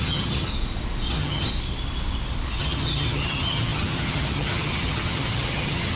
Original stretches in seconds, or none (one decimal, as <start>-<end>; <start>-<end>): 0.5-1.1; 1.5-2.6